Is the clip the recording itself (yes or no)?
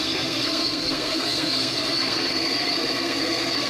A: no